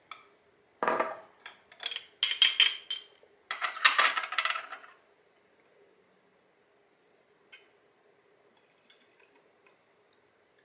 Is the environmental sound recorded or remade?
recorded